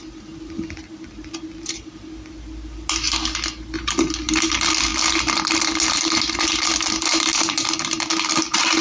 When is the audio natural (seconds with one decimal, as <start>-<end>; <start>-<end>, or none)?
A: 0.0-8.8